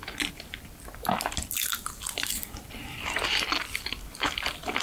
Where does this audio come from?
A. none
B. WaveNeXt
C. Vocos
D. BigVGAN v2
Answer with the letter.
A